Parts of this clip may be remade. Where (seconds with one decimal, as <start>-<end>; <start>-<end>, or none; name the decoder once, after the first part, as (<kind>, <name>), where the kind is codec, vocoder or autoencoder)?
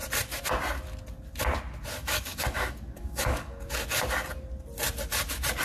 2.0-3.7 (codec, DAC)